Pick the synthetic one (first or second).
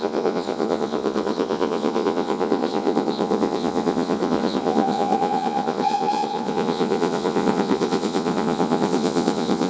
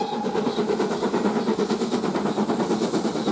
first